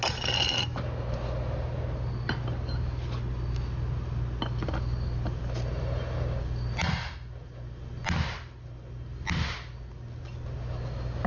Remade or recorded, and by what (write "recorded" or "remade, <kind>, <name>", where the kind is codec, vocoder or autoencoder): recorded